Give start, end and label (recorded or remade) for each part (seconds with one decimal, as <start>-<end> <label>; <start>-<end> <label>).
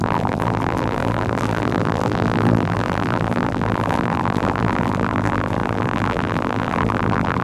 0.0-7.4 remade